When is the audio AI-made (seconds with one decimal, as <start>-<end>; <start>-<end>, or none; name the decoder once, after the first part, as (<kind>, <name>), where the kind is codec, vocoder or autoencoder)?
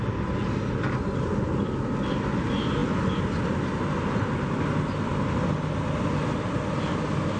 none